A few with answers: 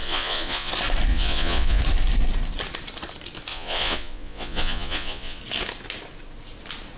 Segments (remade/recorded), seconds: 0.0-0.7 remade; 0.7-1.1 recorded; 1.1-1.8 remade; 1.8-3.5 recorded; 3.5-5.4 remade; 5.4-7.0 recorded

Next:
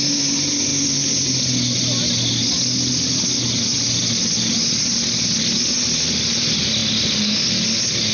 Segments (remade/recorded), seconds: 0.0-8.1 recorded